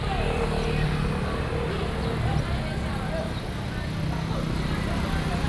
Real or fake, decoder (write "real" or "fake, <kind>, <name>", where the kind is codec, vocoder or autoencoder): real